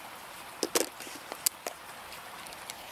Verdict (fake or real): real